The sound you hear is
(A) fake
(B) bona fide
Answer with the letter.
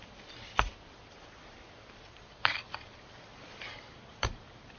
B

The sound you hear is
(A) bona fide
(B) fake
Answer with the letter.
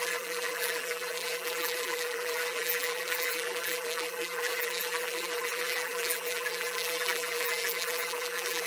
B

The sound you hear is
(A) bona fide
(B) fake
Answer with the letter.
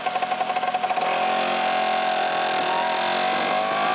A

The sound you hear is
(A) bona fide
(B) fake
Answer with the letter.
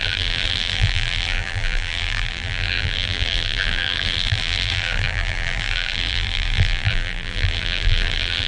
B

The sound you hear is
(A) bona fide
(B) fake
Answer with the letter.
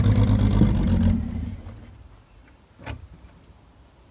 A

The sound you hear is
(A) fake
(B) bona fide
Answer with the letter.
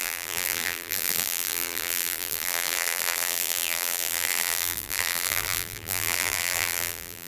A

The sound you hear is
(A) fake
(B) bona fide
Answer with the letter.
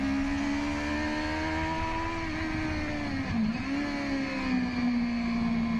B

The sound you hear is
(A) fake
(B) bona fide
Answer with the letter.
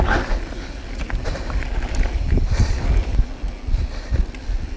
B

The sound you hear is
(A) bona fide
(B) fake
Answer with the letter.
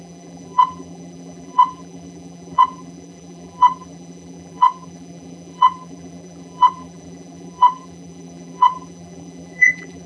B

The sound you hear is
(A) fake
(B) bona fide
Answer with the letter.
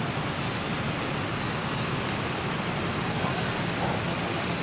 B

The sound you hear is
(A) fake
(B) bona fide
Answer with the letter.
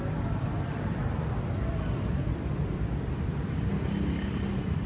B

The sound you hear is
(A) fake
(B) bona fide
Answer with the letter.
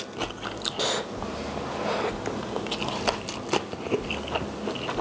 B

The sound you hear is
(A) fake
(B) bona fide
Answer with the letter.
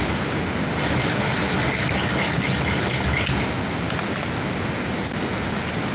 B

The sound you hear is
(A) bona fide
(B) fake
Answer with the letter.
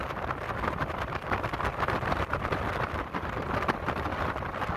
B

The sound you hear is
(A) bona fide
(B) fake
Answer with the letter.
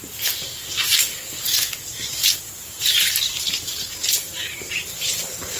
B